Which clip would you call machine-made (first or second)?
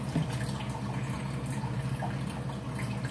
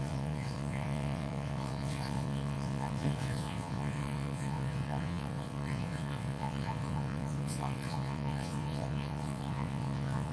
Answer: second